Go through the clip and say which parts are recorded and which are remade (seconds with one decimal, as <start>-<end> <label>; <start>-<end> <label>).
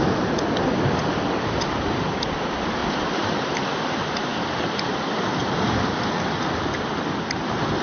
0.0-2.8 recorded; 2.8-3.5 remade; 3.5-4.3 recorded; 4.3-5.8 remade; 5.8-7.8 recorded